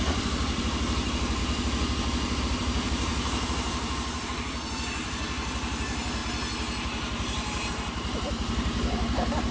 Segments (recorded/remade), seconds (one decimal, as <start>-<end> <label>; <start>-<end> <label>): 0.0-1.4 remade; 1.4-2.4 recorded; 2.4-6.2 remade; 6.2-7.7 recorded; 7.7-9.5 remade